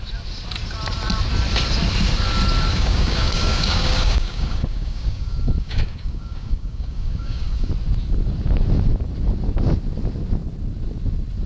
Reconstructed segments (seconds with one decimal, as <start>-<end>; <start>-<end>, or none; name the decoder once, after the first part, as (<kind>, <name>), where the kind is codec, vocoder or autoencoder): 2.7-7.7 (codec, DAC)